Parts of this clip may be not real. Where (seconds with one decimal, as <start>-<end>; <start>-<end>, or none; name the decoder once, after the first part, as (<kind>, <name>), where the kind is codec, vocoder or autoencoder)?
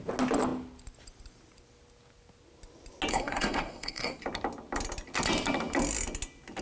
3.1-4.2 (codec, SNAC)